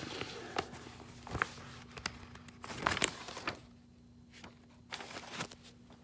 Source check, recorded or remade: recorded